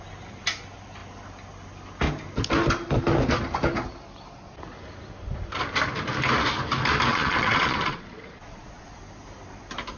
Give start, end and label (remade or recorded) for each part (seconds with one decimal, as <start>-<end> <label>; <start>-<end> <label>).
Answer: 0.0-7.1 recorded; 7.1-9.0 remade; 9.0-10.0 recorded